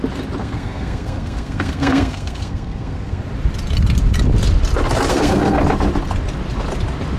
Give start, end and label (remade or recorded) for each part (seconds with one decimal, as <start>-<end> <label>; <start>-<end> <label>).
0.0-0.4 recorded; 0.4-3.2 remade; 3.2-5.1 recorded; 5.1-5.6 remade; 5.6-7.2 recorded